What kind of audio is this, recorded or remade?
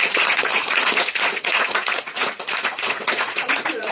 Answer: remade